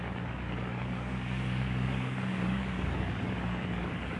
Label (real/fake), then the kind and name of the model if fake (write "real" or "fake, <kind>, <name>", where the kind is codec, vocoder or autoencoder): fake, codec, DAC